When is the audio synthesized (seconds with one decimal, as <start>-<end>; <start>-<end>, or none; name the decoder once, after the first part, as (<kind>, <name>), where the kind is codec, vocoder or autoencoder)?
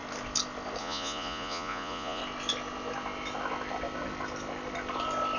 0.8-2.2 (vocoder, Vocos)